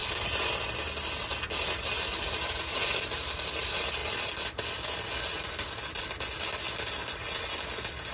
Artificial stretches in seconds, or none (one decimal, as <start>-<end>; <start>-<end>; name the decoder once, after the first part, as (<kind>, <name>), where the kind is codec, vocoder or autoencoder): 0.0-0.7 (vocoder, BigVGAN v2)